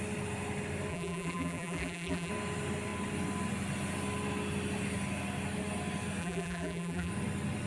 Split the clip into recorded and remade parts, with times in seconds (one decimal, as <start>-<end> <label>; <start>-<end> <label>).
0.0-0.9 recorded; 0.9-2.3 remade; 2.3-6.2 recorded; 6.2-7.1 remade; 7.1-7.7 recorded